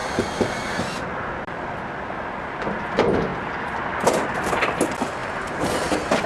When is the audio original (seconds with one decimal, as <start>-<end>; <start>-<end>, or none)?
0.8-5.2; 5.7-6.3